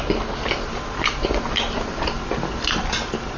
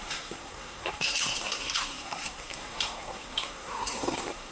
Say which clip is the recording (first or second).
first